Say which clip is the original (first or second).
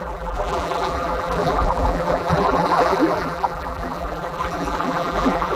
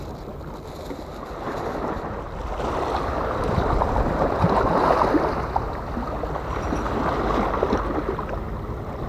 second